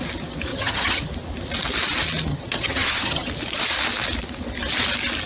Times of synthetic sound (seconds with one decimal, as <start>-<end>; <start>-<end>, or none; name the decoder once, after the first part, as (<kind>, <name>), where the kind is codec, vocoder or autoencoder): 0.5-1.1 (vocoder, HiFi-GAN); 2.3-3.3